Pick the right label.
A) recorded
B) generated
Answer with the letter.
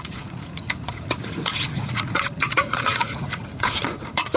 B